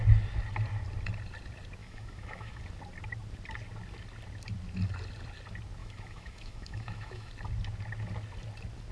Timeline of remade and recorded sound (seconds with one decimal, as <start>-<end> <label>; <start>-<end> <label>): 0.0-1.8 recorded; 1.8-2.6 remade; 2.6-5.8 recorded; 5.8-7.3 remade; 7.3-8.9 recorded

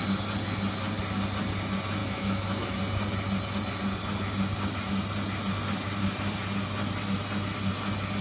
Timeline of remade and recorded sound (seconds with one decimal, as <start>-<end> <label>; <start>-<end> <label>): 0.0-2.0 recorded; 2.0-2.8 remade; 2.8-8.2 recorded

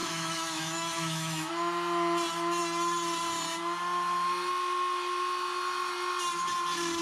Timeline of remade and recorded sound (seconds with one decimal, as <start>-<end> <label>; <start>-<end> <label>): 0.0-1.5 remade; 1.5-7.0 recorded